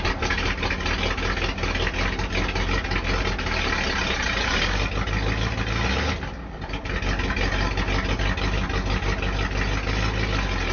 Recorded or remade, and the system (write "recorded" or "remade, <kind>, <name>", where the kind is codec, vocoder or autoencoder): recorded